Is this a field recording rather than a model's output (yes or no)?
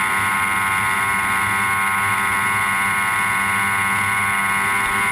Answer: yes